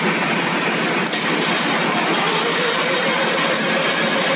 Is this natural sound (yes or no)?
yes